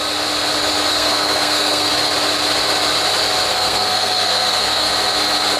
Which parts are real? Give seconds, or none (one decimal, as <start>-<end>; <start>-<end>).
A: 0.0-0.9; 1.9-3.5; 4.9-5.6